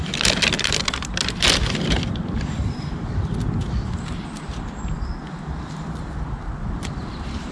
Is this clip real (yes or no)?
yes